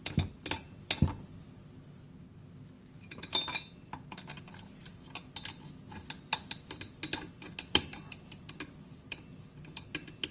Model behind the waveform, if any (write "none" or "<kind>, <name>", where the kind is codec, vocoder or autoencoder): none